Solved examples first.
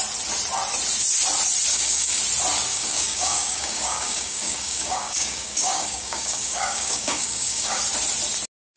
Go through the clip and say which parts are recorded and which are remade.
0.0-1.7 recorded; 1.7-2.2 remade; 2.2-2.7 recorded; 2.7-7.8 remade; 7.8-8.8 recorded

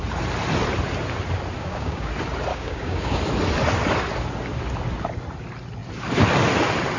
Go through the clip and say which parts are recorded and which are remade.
0.0-1.6 recorded; 1.6-2.1 remade; 2.1-2.5 recorded; 2.5-3.2 remade; 3.2-7.0 recorded